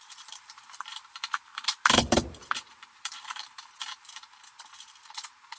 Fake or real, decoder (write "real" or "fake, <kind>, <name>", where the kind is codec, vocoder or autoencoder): fake, vocoder, BigVGAN v2